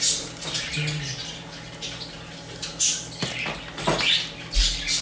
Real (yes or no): yes